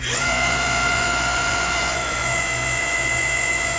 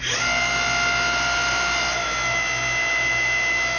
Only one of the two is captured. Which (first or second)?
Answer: second